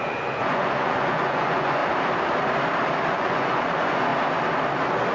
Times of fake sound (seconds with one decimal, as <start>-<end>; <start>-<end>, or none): 0.0-1.8; 3.1-4.1